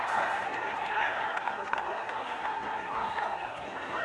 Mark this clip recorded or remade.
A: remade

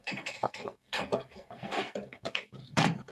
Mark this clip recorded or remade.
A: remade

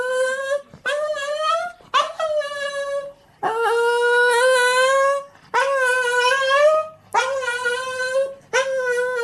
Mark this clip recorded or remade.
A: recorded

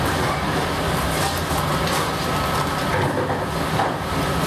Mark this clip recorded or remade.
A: recorded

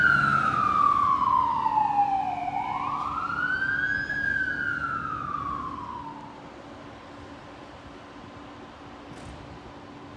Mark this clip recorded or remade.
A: recorded